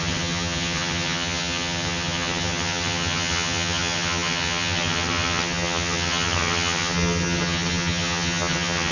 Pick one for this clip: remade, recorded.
remade